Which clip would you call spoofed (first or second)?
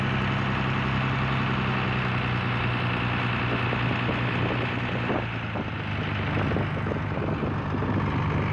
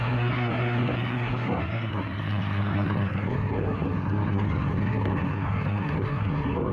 second